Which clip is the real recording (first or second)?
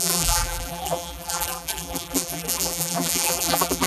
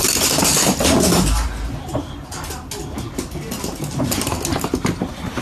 second